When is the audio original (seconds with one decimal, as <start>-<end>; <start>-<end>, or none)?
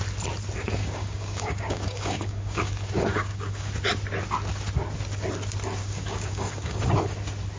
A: 0.0-0.8; 2.7-3.1; 3.7-5.8; 6.8-7.6